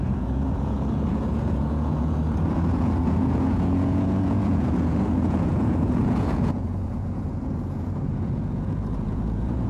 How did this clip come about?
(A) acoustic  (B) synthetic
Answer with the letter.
B